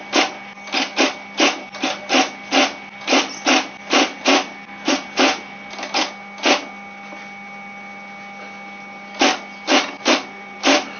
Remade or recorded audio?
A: recorded